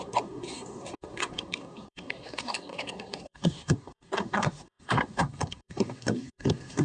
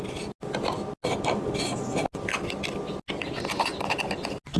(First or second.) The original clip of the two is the second